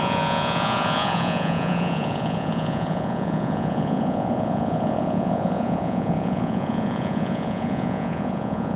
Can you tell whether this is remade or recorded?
remade